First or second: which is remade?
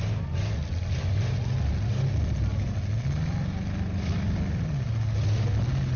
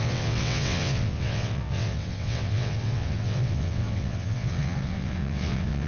second